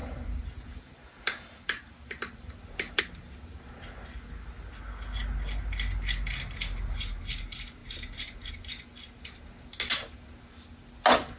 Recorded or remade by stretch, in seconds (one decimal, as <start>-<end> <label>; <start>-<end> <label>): 0.0-3.0 remade; 3.0-11.4 recorded